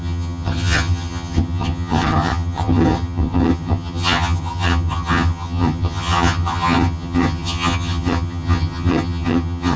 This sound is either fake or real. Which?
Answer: fake